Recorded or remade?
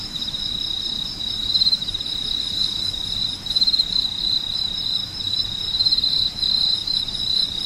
remade